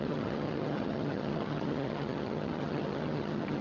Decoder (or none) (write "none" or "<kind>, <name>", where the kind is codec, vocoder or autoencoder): vocoder, HiFi-GAN